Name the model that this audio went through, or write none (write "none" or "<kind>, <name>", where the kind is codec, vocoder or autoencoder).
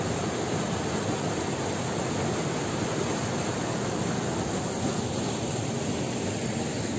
none